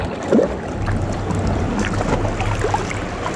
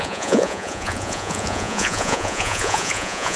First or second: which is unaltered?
first